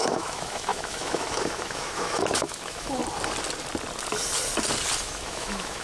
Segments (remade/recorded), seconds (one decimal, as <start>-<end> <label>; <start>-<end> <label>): 0.0-3.0 remade; 3.0-5.0 recorded; 5.0-5.8 remade